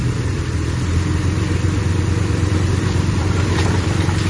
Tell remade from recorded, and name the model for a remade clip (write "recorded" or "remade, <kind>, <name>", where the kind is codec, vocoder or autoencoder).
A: remade, vocoder, BigVGAN v2